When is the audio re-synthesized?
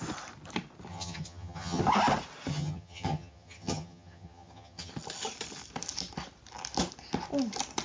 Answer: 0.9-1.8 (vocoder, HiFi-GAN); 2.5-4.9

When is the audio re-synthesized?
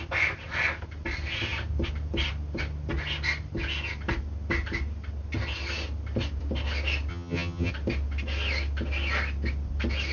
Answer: 7.1-7.7 (vocoder, HiFi-GAN)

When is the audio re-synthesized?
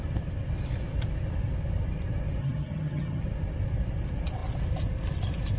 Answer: 2.4-3.2 (vocoder, HiFi-GAN)